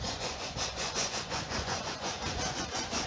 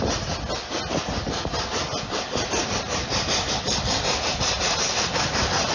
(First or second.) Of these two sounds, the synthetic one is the first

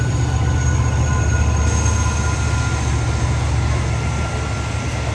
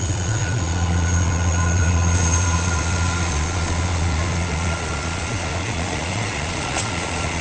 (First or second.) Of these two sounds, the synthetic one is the second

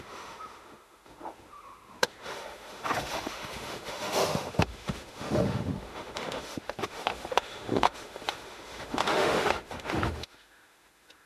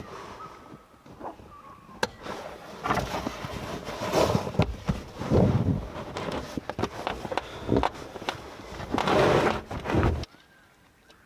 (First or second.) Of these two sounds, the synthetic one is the first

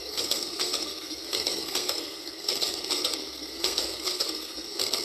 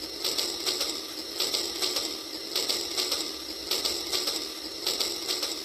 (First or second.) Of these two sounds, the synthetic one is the first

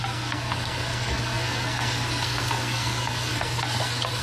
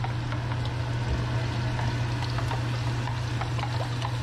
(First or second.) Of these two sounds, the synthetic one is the first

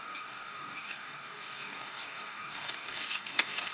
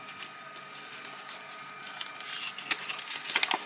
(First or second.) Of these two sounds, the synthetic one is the first